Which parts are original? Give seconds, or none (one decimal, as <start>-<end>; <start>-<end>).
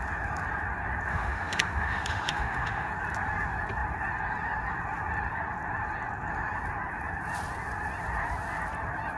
0.0-1.1; 2.9-9.2